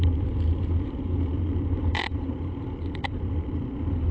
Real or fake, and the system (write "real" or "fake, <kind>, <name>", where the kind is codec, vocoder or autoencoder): fake, vocoder, BigVGAN v2